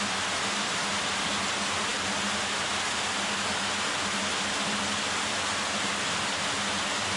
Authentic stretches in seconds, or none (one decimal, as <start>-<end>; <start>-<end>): 0.0-7.2